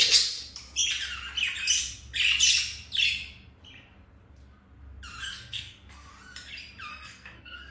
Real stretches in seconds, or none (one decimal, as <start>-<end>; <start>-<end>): 0.0-5.3; 6.1-6.9